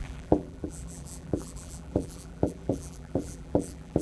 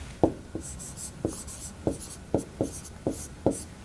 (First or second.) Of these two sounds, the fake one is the first